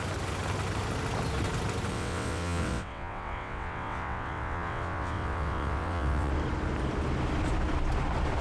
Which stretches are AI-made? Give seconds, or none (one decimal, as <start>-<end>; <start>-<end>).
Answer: 1.9-6.3

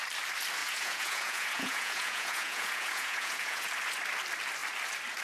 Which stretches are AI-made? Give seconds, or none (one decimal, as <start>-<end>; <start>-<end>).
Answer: 0.6-3.7